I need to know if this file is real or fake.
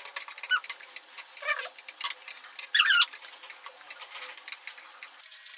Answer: real